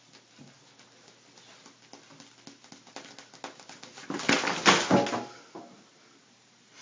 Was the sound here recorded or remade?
recorded